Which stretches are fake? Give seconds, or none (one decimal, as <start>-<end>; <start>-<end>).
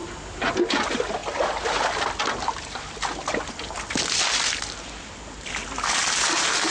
none